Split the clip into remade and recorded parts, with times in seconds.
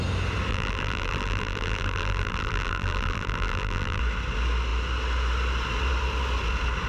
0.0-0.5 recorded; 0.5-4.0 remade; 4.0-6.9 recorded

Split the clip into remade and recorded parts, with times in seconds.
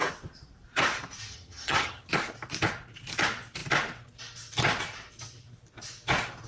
0.0-1.3 recorded; 1.3-2.1 remade; 2.1-6.5 recorded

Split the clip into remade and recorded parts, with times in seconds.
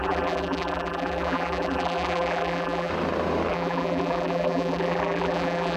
0.0-2.9 remade; 2.9-3.5 recorded; 3.5-5.8 remade